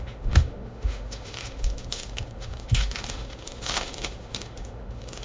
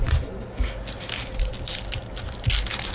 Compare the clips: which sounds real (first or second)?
second